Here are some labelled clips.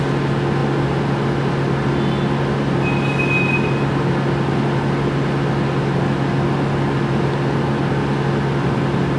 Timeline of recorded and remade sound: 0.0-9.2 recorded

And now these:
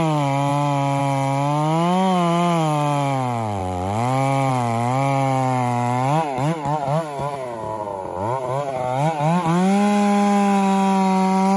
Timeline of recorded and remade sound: 0.0-11.6 recorded

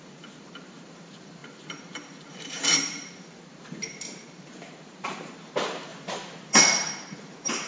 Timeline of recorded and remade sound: 0.0-7.7 remade

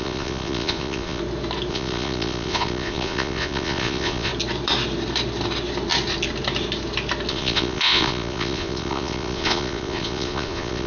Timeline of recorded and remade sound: 0.0-1.2 remade; 1.2-1.7 recorded; 1.7-4.3 remade; 4.3-7.3 recorded; 7.3-10.9 remade

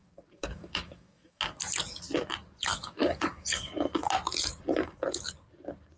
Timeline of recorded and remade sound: 0.0-1.4 remade; 1.4-2.7 recorded; 2.7-3.7 remade; 3.7-6.0 recorded